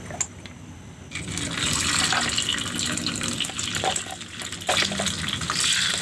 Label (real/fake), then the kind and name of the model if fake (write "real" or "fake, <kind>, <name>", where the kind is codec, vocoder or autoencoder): real